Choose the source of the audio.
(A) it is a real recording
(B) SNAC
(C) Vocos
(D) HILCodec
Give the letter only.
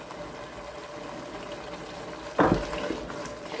A